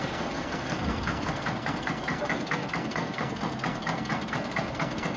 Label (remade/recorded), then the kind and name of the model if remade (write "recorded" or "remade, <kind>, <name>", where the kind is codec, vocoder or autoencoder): remade, codec, SNAC